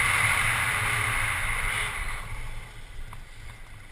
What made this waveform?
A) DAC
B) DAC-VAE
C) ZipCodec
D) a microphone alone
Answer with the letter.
D